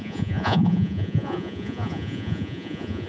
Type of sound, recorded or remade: remade